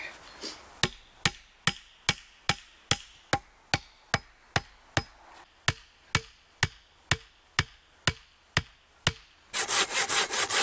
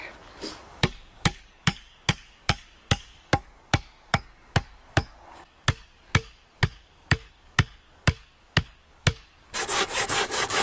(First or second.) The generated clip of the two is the second